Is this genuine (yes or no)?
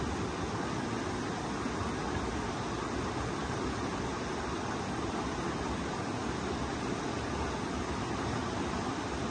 yes